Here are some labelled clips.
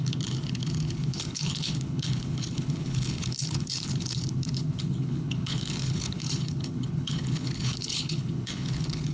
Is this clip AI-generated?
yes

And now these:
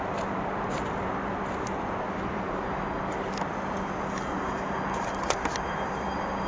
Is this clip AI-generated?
no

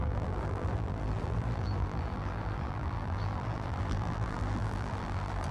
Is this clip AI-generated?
yes